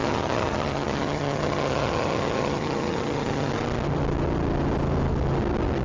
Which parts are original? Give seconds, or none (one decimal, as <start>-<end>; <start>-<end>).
3.5-5.8

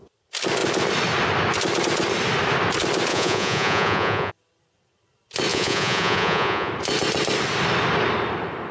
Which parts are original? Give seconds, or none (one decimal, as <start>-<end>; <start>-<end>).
0.0-3.1; 4.3-5.5; 6.7-8.7

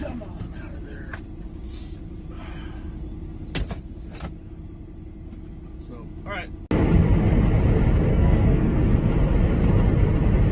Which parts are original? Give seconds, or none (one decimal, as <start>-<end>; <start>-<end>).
0.0-8.1; 9.1-10.5

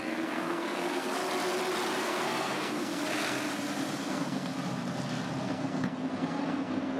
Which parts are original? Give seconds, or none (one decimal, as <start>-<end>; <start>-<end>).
1.2-2.0; 3.5-4.0; 4.5-5.4

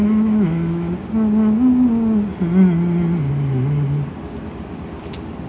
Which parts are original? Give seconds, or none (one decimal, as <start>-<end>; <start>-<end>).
0.9-5.5

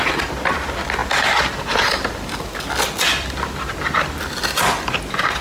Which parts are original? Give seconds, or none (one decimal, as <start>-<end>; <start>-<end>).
0.0-5.4

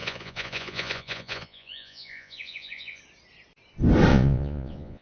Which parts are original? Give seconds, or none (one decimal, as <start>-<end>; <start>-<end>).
3.0-4.1

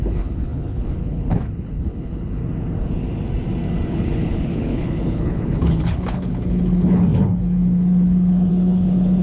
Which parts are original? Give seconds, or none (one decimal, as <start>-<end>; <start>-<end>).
2.4-3.9